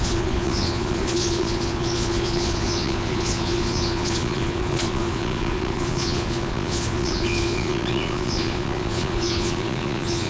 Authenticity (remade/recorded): remade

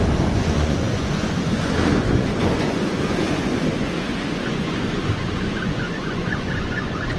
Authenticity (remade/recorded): remade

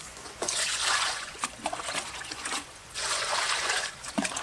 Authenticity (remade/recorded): remade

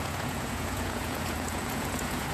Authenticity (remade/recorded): remade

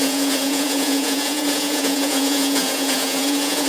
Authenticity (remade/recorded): remade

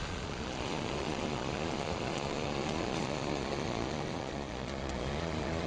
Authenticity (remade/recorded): remade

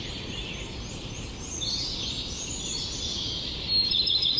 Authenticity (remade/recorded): recorded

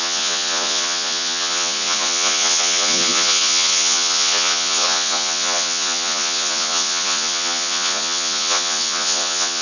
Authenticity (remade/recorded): remade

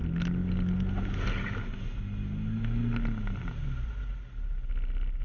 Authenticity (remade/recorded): recorded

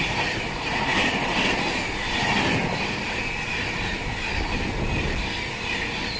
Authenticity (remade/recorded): recorded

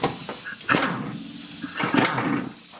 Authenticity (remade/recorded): recorded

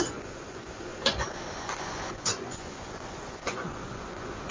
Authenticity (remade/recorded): remade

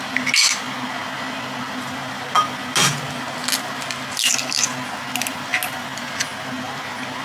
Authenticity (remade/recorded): recorded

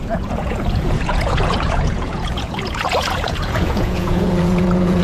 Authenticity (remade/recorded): remade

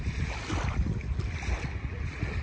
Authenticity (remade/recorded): recorded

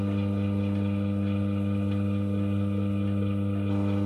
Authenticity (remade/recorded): recorded